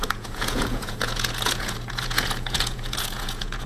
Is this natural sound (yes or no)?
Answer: no